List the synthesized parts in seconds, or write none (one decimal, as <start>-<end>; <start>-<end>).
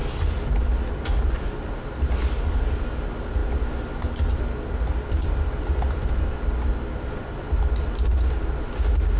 none